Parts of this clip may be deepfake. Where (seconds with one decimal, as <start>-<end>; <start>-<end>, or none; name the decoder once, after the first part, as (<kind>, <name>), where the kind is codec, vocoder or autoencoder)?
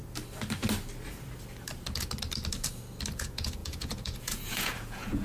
3.1-5.2 (vocoder, Vocos)